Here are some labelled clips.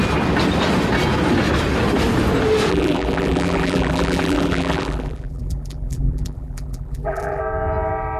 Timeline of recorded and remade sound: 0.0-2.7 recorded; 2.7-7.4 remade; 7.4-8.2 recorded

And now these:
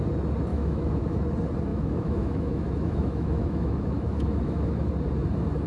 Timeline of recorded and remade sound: 0.0-0.5 recorded; 0.5-1.2 remade; 1.2-1.7 recorded; 1.7-4.9 remade; 4.9-5.7 recorded

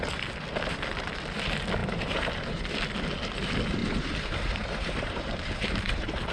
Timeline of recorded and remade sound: 0.0-1.8 recorded; 1.8-2.7 remade; 2.7-3.8 recorded; 3.8-6.3 remade